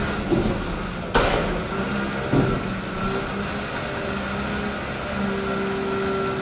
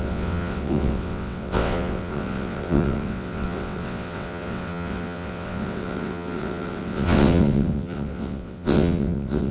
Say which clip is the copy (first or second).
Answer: second